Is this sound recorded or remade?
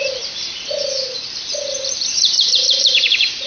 remade